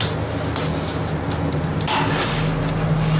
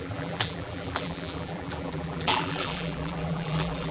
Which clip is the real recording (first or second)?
first